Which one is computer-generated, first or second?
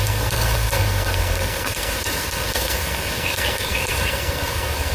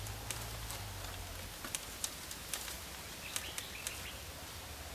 first